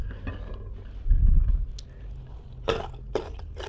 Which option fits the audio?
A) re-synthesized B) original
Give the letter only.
B